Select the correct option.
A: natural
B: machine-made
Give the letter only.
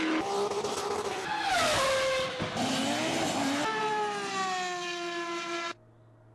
A